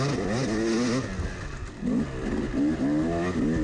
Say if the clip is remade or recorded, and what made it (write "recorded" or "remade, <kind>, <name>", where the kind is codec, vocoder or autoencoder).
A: recorded